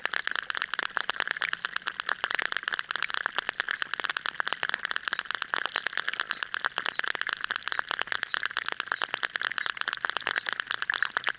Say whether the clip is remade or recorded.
recorded